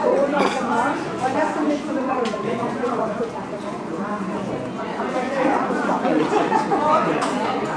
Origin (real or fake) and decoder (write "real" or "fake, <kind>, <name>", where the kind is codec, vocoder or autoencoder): fake, vocoder, Vocos